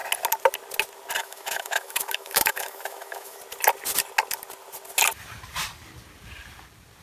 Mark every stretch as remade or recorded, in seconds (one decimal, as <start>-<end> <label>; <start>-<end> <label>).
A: 0.0-1.2 recorded; 1.2-3.4 remade; 3.4-7.0 recorded